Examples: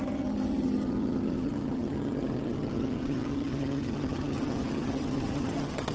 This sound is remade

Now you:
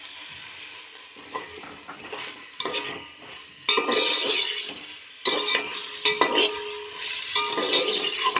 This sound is recorded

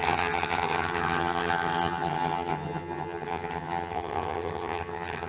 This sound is remade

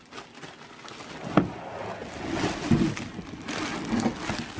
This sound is recorded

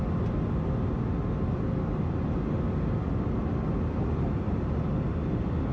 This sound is recorded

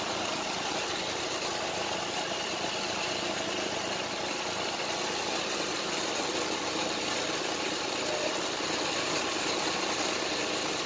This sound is recorded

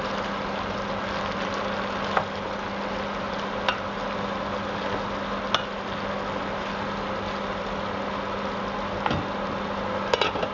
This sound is recorded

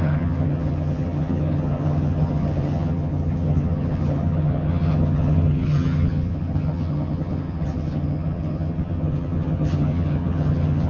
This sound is remade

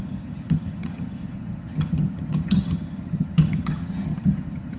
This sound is remade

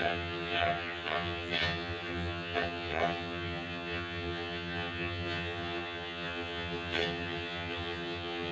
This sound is remade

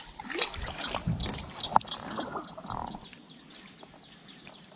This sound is recorded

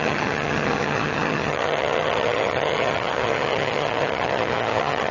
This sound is remade